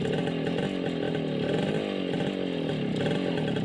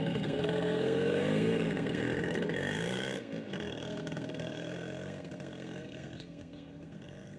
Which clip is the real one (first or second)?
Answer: first